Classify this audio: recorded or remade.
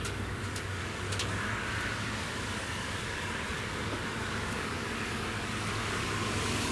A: remade